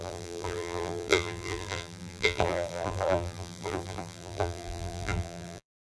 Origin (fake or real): fake